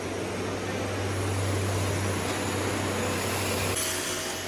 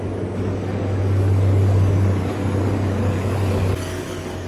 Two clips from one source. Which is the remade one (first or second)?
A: second